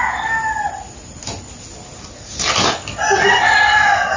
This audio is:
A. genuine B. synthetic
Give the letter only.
A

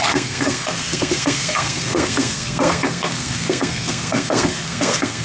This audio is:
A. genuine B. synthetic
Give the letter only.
B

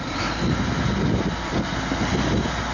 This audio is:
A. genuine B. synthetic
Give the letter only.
A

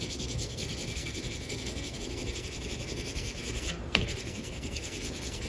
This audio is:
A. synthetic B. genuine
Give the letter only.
A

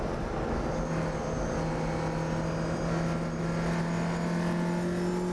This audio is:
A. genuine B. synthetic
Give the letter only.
A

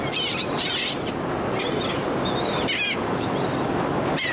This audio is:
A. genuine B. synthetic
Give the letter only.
A